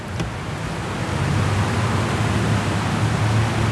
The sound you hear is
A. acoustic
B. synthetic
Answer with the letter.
A